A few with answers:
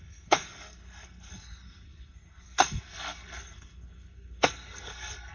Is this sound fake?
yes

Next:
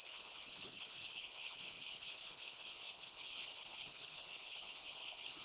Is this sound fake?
yes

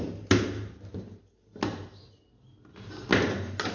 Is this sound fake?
no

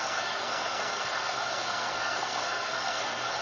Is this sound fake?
yes